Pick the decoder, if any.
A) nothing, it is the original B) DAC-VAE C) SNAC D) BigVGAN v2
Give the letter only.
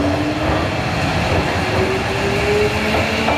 A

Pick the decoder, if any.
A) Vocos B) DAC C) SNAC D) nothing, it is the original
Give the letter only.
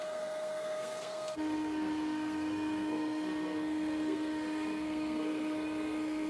C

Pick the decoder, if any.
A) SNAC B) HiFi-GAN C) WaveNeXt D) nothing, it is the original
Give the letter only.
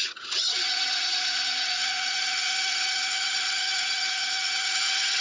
B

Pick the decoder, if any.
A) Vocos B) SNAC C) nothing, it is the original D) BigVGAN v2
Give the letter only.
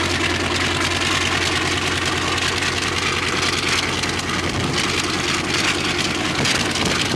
C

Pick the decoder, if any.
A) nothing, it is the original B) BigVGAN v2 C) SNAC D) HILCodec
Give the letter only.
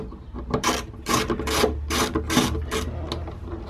A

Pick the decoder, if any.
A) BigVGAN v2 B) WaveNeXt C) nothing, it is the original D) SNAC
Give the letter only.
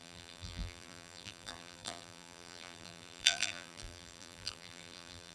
A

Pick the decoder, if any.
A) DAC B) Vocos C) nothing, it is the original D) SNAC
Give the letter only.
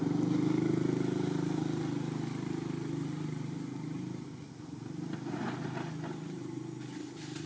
C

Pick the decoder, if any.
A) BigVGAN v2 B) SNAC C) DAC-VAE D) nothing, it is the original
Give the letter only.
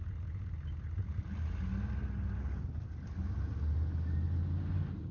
D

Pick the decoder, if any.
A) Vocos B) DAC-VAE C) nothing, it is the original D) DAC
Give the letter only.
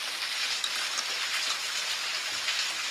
C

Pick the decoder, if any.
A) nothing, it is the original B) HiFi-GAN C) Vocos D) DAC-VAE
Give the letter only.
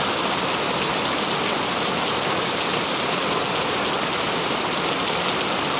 A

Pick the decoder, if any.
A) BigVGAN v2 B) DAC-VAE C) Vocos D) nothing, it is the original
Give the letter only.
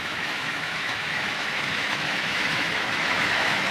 B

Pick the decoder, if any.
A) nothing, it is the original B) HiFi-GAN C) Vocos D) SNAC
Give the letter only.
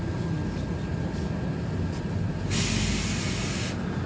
A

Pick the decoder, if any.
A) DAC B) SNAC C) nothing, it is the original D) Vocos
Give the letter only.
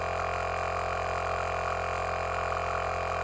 C